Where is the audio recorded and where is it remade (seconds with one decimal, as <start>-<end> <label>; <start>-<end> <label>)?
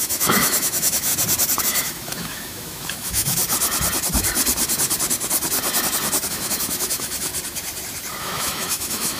0.0-1.1 remade; 1.1-1.6 recorded; 1.6-3.4 remade; 3.4-6.3 recorded; 6.3-7.3 remade; 7.3-8.2 recorded; 8.2-9.2 remade